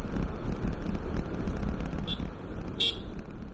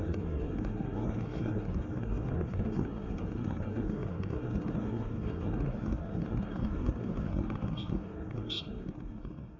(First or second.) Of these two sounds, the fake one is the second